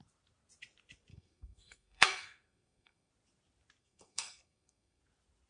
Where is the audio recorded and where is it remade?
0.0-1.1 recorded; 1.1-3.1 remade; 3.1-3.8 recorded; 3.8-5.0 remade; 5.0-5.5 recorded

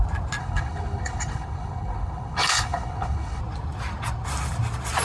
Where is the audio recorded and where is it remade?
0.0-0.4 recorded; 0.4-3.4 remade; 3.4-5.0 recorded

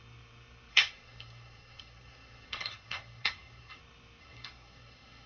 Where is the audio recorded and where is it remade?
0.0-0.7 recorded; 0.7-3.8 remade; 3.8-4.2 recorded; 4.2-5.3 remade

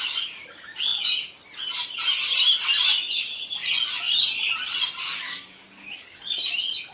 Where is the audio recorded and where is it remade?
0.0-5.0 recorded; 5.0-6.3 remade; 6.3-6.9 recorded

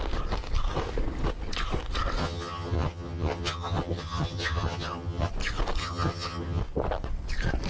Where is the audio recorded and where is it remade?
0.0-2.2 recorded; 2.2-5.3 remade; 5.3-5.8 recorded; 5.8-6.6 remade; 6.6-7.7 recorded

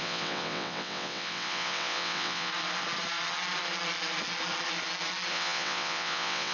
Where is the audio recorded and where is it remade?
0.0-2.5 remade; 2.5-5.3 recorded; 5.3-6.5 remade